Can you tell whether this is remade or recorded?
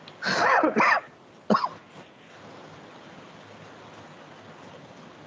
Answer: recorded